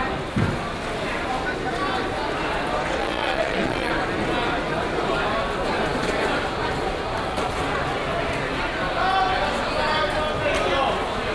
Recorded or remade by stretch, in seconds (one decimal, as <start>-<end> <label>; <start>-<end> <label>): 0.0-3.0 recorded; 3.0-3.9 remade; 3.9-11.3 recorded